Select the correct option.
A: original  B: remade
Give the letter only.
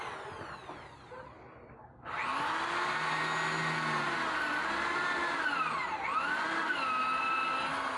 A